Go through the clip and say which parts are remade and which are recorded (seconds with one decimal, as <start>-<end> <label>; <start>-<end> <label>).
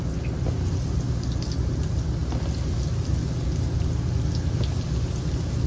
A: 0.0-5.7 recorded